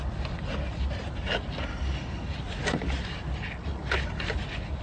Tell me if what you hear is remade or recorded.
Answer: recorded